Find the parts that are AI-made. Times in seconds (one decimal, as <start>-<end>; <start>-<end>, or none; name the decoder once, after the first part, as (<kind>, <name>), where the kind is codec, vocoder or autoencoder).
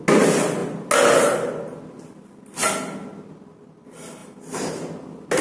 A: none